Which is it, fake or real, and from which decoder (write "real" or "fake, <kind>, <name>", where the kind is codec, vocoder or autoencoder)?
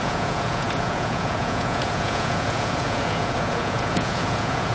fake, vocoder, Vocos